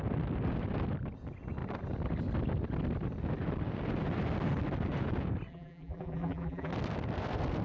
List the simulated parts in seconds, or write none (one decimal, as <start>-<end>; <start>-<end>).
5.5-6.7